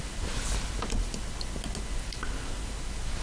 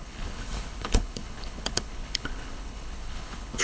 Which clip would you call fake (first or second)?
second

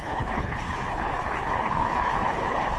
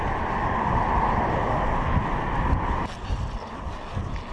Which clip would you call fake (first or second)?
first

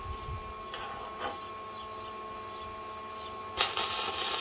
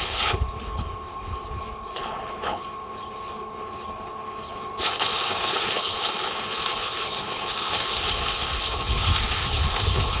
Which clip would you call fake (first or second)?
second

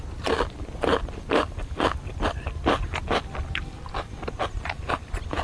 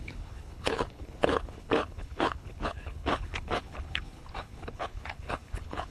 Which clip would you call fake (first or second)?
second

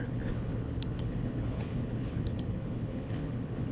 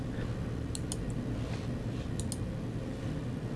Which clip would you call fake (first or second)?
first